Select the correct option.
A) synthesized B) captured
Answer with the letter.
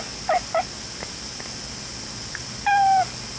B